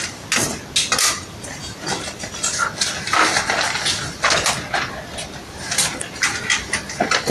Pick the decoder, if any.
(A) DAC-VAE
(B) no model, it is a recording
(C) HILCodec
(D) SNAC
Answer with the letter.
B